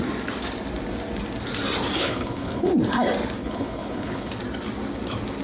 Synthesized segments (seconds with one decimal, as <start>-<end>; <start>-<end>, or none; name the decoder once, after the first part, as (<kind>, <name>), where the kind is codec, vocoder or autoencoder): 2.0-2.7 (codec, HILCodec); 3.4-4.3